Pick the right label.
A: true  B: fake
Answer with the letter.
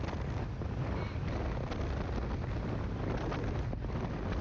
B